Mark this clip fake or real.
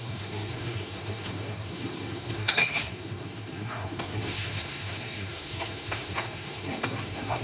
fake